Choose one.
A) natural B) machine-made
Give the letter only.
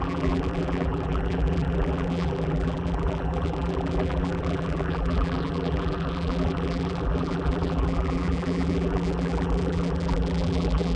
B